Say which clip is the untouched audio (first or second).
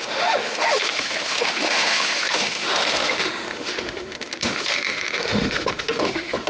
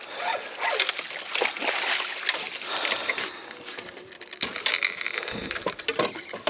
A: second